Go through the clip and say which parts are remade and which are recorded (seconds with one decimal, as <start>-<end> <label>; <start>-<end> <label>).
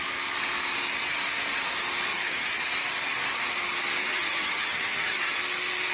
0.0-2.1 recorded; 2.1-2.7 remade; 2.7-4.0 recorded; 4.0-5.4 remade; 5.4-5.9 recorded